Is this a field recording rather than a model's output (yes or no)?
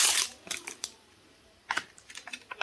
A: no